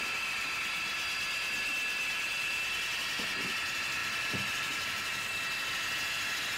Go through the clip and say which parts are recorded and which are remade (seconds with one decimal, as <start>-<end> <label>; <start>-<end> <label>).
0.0-2.0 recorded; 2.0-3.5 remade; 3.5-4.0 recorded; 4.0-5.3 remade; 5.3-6.6 recorded